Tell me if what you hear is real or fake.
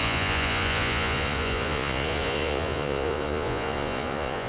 fake